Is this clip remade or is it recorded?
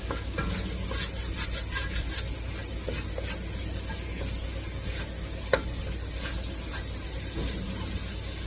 recorded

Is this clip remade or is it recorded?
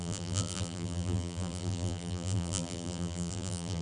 remade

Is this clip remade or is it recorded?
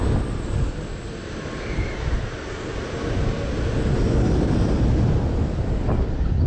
recorded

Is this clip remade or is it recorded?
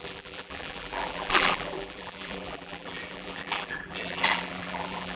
remade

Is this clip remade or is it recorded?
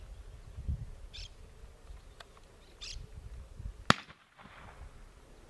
recorded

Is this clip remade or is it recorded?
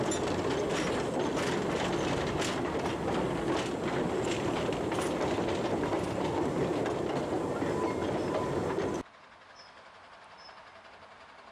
recorded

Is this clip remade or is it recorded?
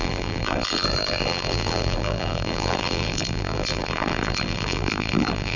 remade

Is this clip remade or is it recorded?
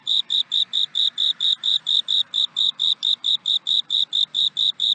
remade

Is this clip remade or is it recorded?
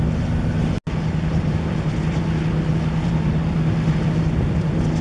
recorded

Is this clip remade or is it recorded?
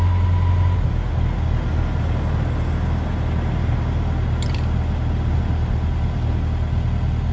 recorded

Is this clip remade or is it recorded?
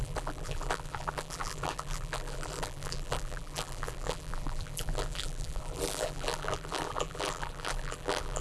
remade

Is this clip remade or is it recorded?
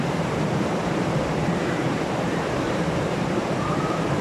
remade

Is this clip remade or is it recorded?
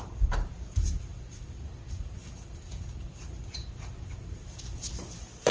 remade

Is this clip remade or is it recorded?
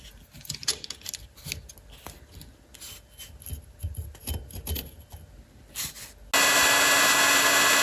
recorded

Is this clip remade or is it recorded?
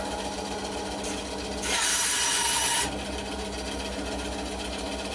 recorded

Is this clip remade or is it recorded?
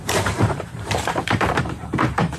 remade